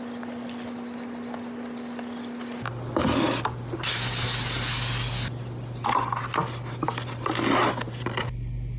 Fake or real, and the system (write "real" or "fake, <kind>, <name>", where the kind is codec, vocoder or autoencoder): real